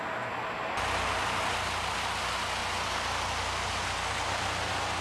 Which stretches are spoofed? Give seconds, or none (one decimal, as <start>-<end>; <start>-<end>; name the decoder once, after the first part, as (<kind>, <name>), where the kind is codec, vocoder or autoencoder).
none